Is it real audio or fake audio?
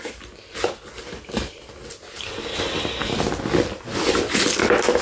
real